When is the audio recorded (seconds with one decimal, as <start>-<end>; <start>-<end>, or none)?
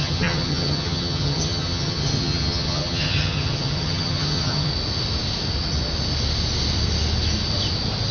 4.7-8.1